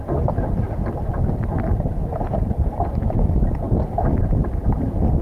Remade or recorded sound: recorded